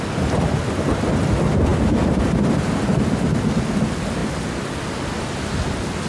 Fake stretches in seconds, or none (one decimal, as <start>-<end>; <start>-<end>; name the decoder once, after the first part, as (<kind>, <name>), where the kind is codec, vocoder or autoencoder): none